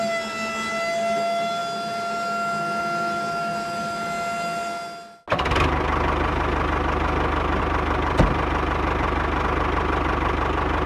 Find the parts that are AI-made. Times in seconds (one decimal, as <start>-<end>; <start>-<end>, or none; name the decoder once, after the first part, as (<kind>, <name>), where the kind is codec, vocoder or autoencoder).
none